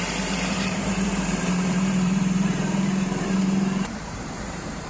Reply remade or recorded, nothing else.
remade